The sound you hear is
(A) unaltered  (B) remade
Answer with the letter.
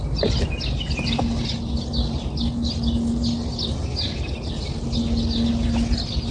A